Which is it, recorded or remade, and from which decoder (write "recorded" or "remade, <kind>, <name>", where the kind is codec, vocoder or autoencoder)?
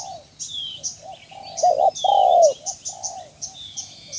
recorded